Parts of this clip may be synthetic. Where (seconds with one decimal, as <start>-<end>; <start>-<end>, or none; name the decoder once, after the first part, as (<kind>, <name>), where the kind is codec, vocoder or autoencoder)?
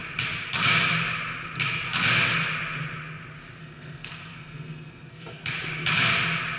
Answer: 3.6-5.4 (codec, SNAC)